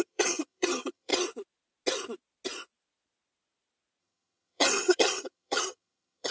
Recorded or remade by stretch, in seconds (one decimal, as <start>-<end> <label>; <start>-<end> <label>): 0.0-1.1 remade; 1.1-4.0 recorded; 4.0-6.3 remade